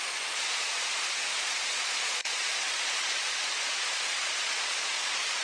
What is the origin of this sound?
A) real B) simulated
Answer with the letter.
B